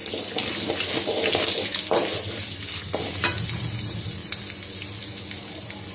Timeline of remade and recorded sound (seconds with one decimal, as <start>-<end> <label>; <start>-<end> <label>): 0.0-5.9 recorded